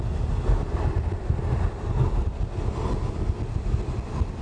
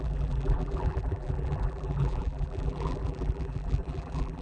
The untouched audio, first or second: first